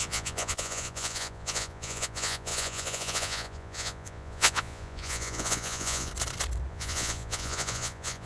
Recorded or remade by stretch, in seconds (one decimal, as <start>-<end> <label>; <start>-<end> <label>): 0.0-6.1 remade; 6.1-6.7 recorded; 6.7-8.3 remade